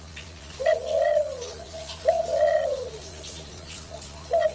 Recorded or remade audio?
remade